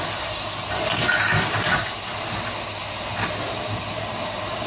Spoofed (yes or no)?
no